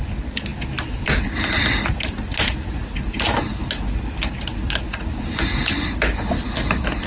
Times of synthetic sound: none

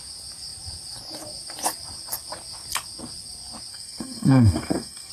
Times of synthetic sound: 3.7-5.1